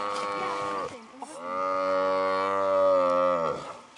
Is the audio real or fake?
real